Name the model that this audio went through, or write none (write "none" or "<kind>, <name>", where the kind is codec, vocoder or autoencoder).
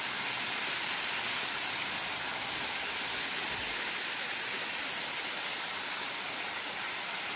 none